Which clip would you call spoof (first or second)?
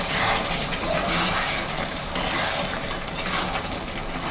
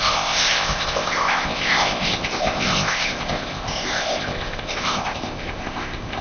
second